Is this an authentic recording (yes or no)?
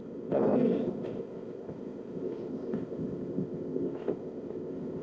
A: no